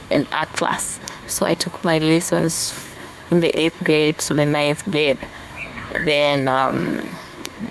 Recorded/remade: remade